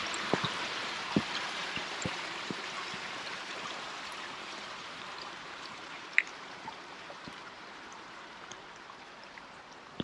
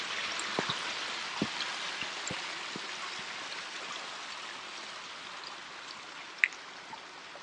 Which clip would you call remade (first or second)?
first